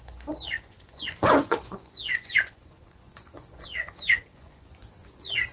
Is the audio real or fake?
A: fake